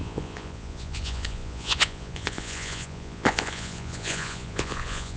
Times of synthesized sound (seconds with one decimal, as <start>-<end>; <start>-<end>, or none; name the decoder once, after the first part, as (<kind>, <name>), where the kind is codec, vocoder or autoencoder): 0.0-5.2 (vocoder, Vocos)

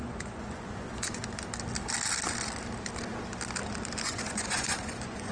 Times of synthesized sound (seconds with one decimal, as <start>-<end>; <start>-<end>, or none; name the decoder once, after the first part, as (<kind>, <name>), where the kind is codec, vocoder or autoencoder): 0.0-1.2 (vocoder, Vocos); 4.0-5.3

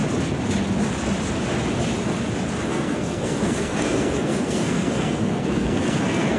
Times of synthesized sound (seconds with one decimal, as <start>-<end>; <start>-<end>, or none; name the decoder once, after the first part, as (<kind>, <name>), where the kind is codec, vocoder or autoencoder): 2.7-6.4 (codec, SNAC)